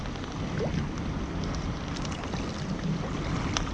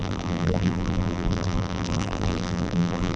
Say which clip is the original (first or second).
first